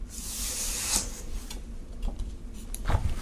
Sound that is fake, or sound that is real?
real